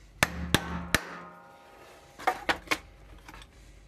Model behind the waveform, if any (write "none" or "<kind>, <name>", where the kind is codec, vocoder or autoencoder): none